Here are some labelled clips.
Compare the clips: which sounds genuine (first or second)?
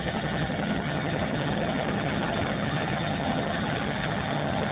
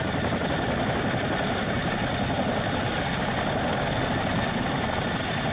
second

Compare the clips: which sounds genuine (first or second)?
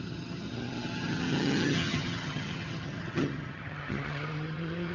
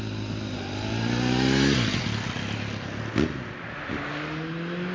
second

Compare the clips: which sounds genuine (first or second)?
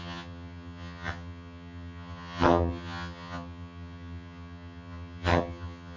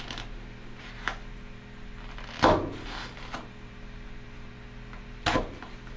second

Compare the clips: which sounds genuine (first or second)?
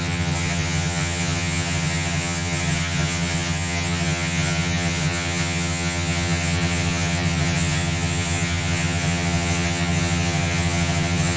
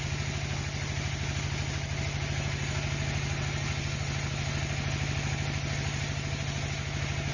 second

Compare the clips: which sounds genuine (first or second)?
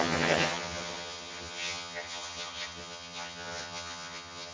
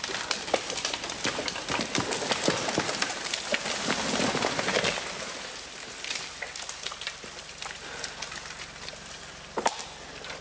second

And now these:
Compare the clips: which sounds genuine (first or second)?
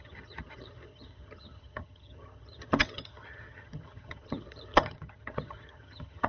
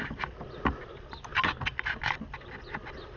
second